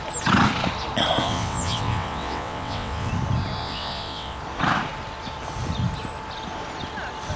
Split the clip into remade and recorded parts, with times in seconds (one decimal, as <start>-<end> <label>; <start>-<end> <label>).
0.0-1.2 recorded; 1.2-3.1 remade; 3.1-3.6 recorded; 3.6-4.4 remade; 4.4-7.4 recorded